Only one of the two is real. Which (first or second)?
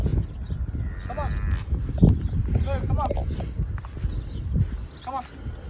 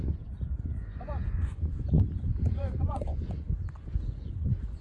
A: first